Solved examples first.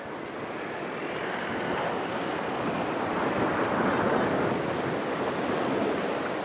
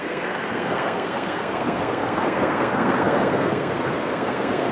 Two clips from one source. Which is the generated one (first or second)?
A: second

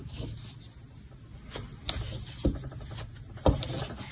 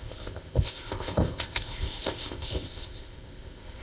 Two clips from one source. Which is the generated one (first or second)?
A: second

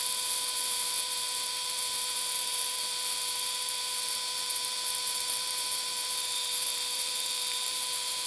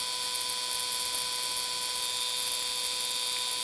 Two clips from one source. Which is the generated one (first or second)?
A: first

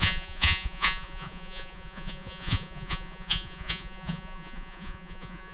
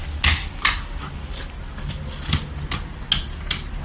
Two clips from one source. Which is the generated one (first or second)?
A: first